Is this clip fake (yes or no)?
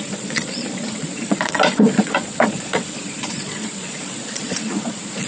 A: yes